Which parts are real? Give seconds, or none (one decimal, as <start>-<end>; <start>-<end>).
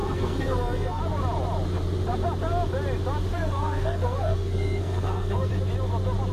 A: 1.0-3.3; 5.5-6.3